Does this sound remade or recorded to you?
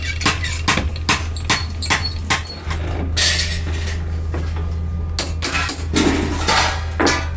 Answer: recorded